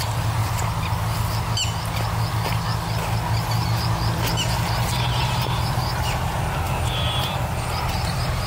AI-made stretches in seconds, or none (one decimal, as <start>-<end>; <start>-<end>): 0.0-0.4; 5.2-8.5